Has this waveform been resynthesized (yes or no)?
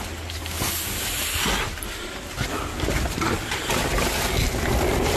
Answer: no